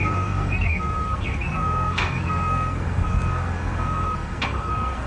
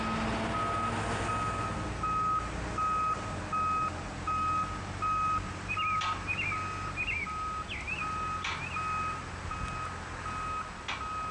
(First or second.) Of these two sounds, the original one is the second